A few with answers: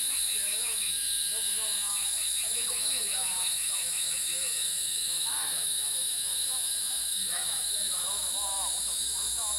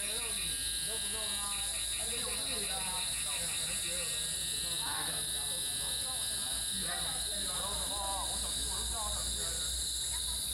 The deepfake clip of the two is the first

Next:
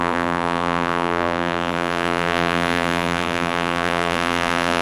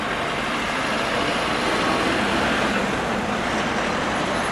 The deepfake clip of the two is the first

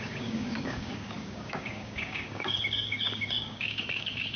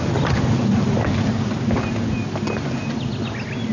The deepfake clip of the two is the first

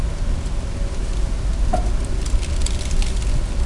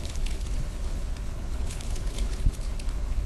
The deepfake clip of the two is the second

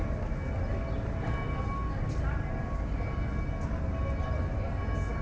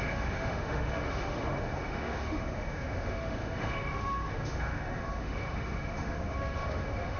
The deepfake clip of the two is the second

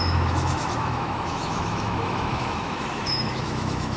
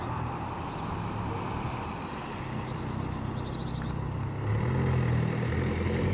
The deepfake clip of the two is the first